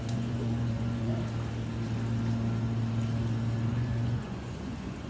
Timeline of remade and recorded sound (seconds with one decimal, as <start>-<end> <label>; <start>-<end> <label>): 0.0-1.1 remade; 1.1-3.7 recorded; 3.7-5.1 remade